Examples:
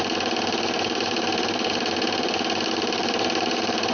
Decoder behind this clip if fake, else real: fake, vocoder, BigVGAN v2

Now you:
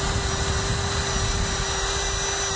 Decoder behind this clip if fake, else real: real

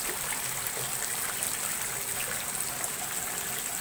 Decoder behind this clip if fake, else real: real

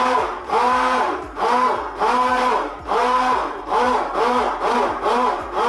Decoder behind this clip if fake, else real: fake, vocoder, BigVGAN v2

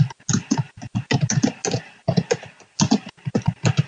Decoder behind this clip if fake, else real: real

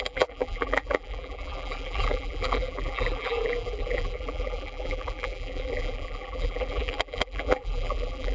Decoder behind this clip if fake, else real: fake, vocoder, BigVGAN v2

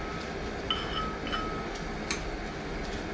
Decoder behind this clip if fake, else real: real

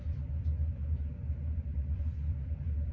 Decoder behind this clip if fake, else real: fake, vocoder, BigVGAN v2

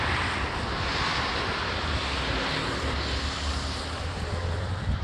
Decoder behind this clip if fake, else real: fake, vocoder, BigVGAN v2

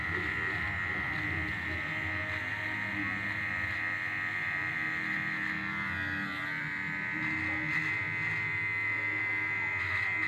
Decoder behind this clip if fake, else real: fake, vocoder, BigVGAN v2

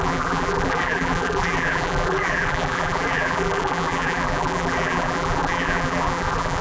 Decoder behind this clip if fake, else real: fake, vocoder, BigVGAN v2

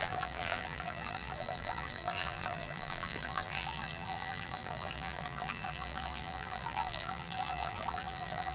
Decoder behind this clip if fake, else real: fake, vocoder, BigVGAN v2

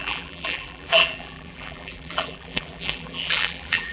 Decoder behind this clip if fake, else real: fake, vocoder, BigVGAN v2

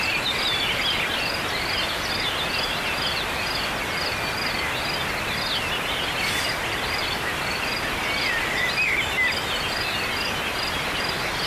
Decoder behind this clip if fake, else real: real